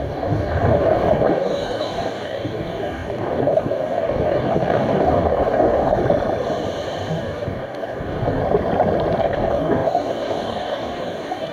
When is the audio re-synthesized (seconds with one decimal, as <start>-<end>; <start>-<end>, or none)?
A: 0.0-6.0; 7.1-8.4; 9.2-11.5